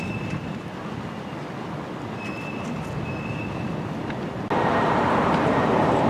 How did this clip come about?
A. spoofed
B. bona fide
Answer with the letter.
B